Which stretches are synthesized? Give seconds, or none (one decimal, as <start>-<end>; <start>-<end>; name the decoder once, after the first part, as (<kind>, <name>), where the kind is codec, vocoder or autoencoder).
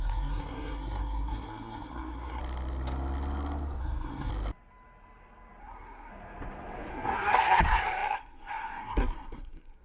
0.0-2.4 (codec, SNAC); 3.8-4.3; 5.6-6.1; 6.9-9.8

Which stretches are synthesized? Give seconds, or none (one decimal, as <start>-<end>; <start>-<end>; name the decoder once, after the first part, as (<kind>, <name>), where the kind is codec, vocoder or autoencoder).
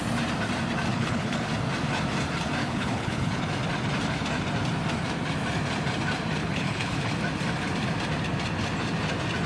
0.9-1.5 (codec, HILCodec); 2.6-3.4; 6.4-7.1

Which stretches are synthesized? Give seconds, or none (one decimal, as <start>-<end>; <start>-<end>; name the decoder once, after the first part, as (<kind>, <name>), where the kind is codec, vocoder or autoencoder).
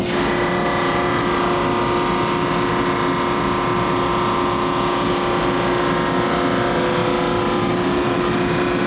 none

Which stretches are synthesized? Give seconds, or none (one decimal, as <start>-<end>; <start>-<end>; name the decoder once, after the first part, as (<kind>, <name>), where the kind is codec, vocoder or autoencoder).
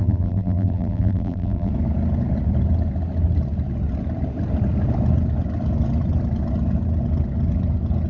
0.0-1.7 (vocoder, BigVGAN v2)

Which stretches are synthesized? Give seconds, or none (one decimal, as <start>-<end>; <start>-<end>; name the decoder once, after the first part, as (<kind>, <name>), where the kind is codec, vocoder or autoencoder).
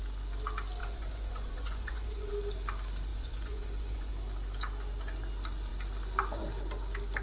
0.8-2.3 (vocoder, Vocos); 3.1-4.1